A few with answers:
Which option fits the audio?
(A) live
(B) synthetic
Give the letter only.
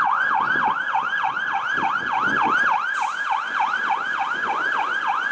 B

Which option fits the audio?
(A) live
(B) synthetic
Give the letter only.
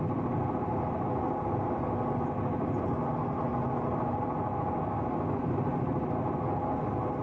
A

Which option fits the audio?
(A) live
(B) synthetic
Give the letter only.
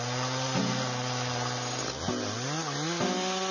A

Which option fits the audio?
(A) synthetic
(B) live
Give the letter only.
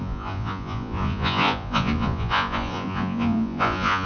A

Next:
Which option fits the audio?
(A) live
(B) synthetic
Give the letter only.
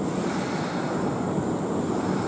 A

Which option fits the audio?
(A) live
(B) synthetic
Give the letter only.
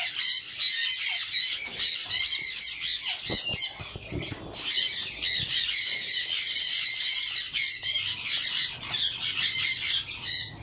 A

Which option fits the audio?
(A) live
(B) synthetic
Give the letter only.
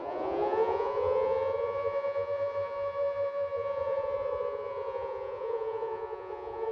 B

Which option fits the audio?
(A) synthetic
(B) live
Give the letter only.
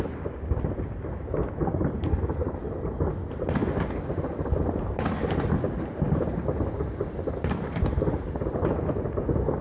B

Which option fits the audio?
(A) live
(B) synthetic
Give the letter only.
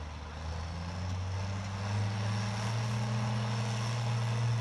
A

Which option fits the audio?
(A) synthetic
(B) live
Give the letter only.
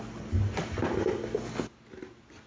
B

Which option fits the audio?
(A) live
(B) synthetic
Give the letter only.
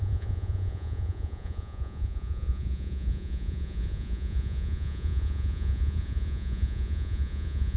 B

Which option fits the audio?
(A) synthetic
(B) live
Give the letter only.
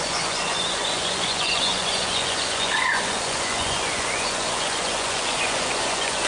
A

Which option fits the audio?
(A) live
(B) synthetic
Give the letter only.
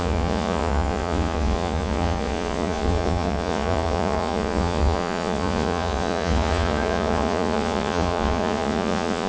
B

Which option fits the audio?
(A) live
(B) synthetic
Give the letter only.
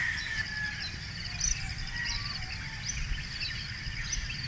A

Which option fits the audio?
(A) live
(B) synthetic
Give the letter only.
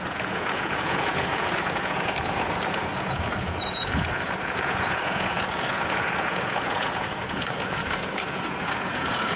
B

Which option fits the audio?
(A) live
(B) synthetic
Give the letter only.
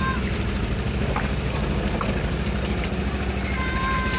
A